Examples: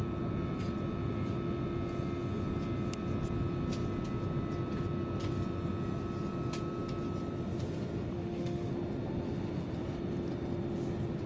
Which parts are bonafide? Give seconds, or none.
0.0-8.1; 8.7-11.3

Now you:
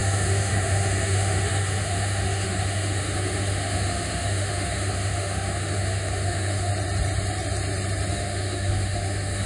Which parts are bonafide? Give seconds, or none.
6.7-8.1

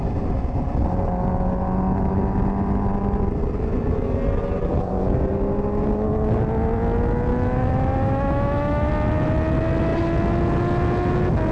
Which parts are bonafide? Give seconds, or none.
0.0-7.3; 8.9-11.5

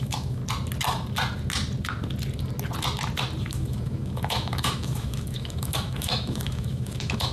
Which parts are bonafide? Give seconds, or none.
0.4-3.4